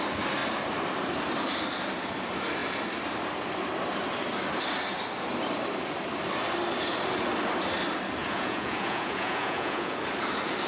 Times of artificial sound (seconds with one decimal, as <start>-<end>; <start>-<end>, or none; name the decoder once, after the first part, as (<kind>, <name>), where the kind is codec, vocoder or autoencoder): 8.2-10.0 (vocoder, Vocos)